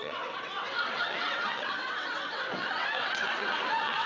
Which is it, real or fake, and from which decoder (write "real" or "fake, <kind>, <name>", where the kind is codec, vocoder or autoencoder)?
fake, vocoder, WaveNeXt